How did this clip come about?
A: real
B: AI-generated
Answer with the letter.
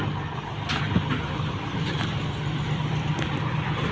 A